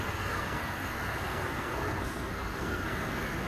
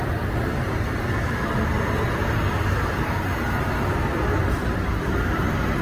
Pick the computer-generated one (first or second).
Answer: first